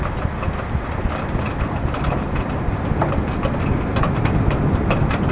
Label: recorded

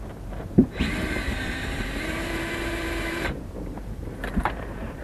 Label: remade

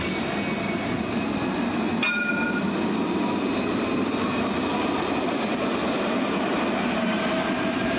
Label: recorded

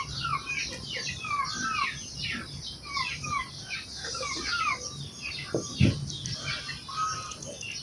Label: recorded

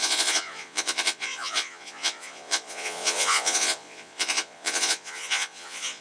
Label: remade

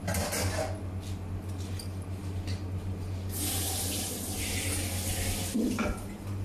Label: recorded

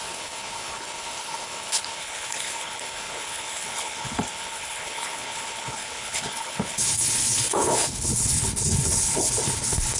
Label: remade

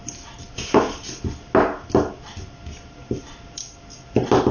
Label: recorded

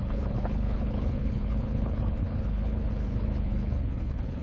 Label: remade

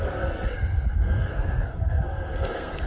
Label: remade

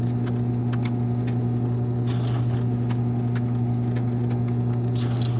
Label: recorded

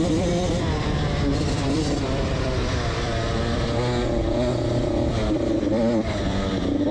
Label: remade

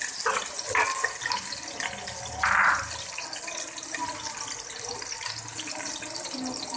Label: recorded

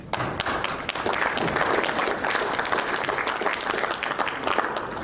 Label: recorded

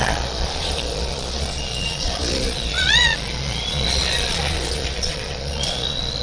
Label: remade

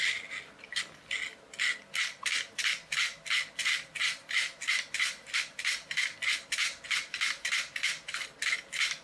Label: recorded